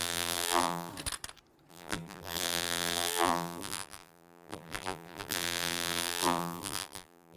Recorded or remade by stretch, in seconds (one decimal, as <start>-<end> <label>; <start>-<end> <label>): 0.0-0.9 remade; 0.9-1.7 recorded; 1.7-7.4 remade